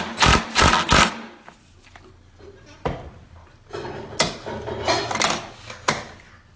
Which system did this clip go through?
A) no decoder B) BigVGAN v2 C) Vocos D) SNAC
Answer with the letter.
A